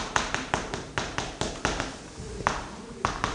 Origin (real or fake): real